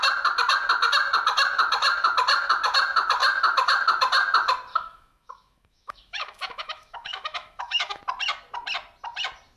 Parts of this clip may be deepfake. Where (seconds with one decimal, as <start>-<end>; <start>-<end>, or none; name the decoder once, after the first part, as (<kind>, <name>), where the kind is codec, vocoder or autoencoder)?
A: 4.7-8.0 (autoencoder, DAC-VAE)